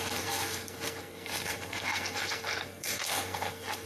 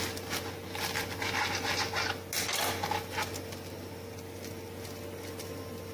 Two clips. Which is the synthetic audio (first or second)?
first